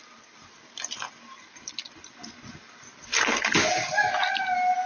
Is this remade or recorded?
recorded